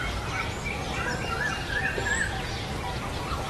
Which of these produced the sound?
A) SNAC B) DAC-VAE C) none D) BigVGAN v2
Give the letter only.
C